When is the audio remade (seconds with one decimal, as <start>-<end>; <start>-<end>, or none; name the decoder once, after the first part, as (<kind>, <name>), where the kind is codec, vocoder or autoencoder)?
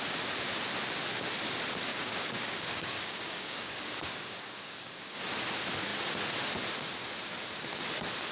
1.9-5.2 (codec, DAC)